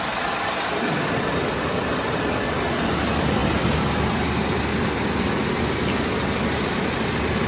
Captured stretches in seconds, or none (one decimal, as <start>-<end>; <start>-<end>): 0.0-7.5